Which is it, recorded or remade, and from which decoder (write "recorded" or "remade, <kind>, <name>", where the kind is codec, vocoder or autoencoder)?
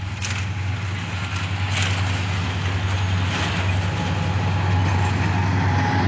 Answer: recorded